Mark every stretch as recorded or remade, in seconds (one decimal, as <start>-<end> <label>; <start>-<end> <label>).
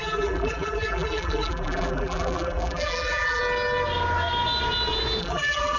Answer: 0.0-3.4 remade; 3.4-5.2 recorded; 5.2-5.8 remade